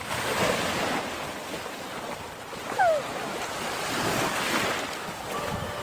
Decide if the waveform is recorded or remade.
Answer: recorded